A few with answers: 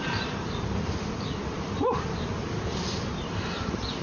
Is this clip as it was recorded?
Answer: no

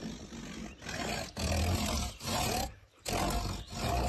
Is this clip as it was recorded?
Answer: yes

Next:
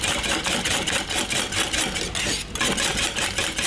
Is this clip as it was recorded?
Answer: yes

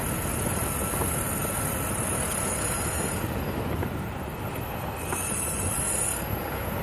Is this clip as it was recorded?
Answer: yes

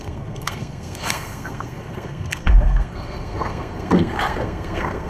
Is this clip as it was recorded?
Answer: no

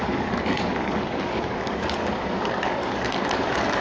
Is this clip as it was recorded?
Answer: no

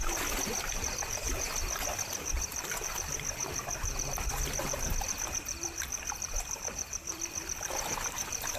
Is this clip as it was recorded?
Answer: no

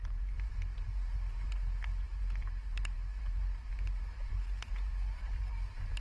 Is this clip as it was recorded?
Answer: no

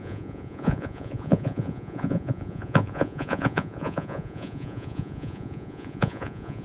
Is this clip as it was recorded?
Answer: no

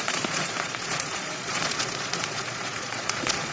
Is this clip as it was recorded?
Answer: no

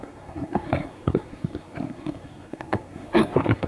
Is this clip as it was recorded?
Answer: no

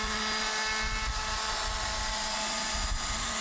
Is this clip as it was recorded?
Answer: yes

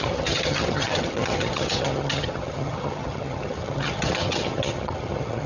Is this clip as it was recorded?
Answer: no